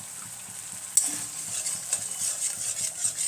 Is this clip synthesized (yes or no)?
no